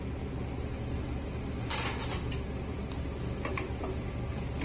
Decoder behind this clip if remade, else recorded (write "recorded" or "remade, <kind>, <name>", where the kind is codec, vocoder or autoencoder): recorded